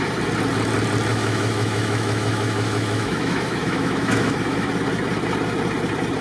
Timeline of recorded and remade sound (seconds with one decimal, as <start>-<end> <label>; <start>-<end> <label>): 0.0-1.1 recorded; 1.1-4.7 remade; 4.7-6.2 recorded

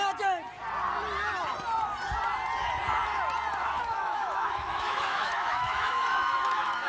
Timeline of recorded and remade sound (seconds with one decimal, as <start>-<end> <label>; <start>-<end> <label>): 0.0-3.6 recorded; 3.6-6.9 remade

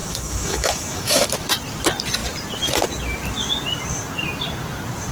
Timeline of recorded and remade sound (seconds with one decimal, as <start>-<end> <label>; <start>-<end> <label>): 0.0-1.2 remade; 1.2-5.1 recorded

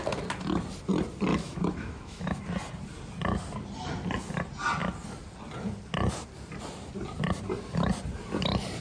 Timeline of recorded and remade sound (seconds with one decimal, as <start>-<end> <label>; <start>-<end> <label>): 0.0-1.3 recorded; 1.3-2.4 remade; 2.4-8.8 recorded

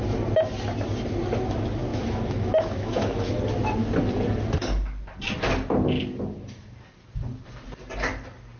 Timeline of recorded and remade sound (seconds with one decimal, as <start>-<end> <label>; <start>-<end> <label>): 0.0-1.9 recorded; 1.9-3.4 remade; 3.4-8.6 recorded

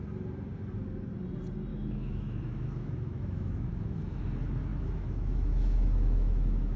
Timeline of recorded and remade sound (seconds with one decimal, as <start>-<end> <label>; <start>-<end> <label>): 0.0-1.7 recorded; 1.7-4.2 remade; 4.2-4.7 recorded; 4.7-6.8 remade

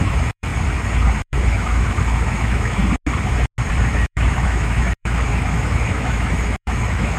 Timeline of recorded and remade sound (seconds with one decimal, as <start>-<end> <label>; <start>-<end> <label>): 0.0-0.5 remade; 0.5-1.2 recorded; 1.2-2.8 remade; 2.8-3.9 recorded; 3.9-7.2 remade